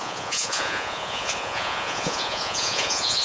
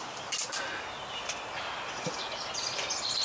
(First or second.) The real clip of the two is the second